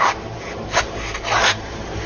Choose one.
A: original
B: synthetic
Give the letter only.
B